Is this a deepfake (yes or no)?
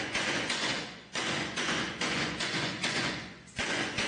yes